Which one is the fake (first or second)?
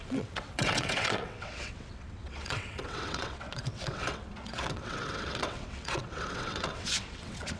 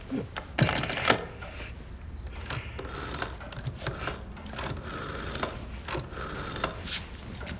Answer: first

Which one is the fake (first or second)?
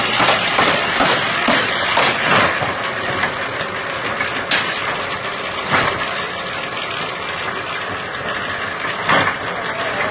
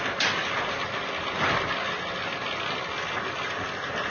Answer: first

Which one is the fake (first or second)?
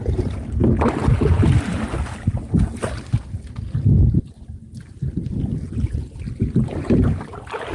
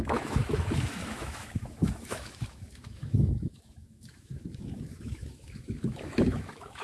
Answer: second